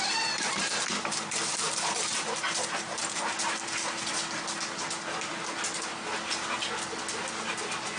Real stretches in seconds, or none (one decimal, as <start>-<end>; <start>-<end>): 3.0-8.0